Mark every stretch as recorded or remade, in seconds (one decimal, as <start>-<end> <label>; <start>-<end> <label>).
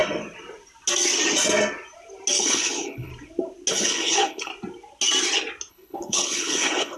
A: 0.0-2.4 recorded; 2.4-3.1 remade; 3.1-3.7 recorded; 3.7-4.5 remade; 4.5-5.7 recorded; 5.7-7.0 remade